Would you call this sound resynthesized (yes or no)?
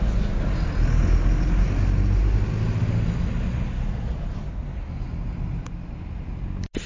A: no